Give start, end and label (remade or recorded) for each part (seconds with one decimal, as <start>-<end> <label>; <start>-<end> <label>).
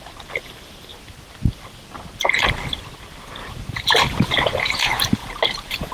0.0-3.4 recorded; 3.4-4.8 remade; 4.8-5.2 recorded; 5.2-5.9 remade